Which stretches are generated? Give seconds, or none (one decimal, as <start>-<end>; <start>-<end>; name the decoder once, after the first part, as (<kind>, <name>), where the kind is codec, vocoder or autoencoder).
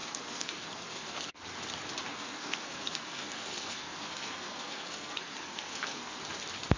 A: 0.0-1.4 (codec, SNAC); 2.1-6.2